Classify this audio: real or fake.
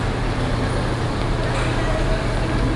real